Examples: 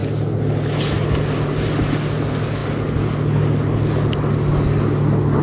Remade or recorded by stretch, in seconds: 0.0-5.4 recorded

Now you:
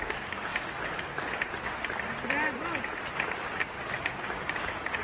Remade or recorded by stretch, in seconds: 0.0-0.5 remade; 0.5-3.5 recorded; 3.5-5.0 remade

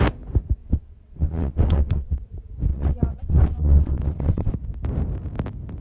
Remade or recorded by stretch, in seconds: 0.0-0.6 recorded; 0.6-2.2 remade; 2.2-2.7 recorded; 2.7-4.5 remade; 4.5-5.8 recorded

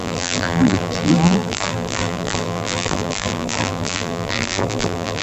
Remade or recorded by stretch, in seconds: 0.0-5.2 remade

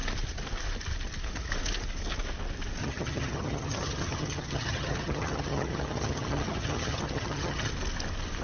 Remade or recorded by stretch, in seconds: 0.0-2.8 recorded; 2.8-7.7 remade; 7.7-8.4 recorded

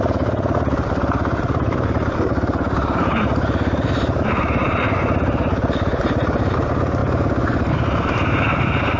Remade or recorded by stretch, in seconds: 0.0-7.0 remade; 7.0-7.7 recorded; 7.7-9.0 remade

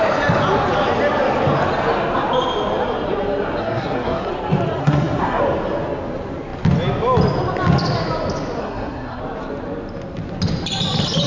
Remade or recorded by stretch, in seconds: 0.0-3.6 recorded; 3.6-4.3 remade; 4.3-4.8 recorded; 4.8-5.4 remade; 5.4-8.6 recorded; 8.6-9.2 remade; 9.2-11.3 recorded

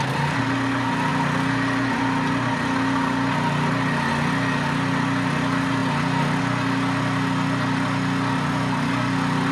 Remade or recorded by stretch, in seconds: 0.0-9.5 recorded